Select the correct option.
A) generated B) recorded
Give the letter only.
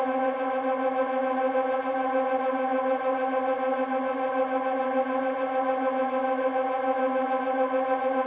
B